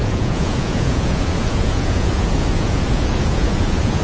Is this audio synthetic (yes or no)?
yes